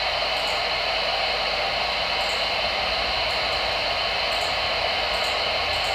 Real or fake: real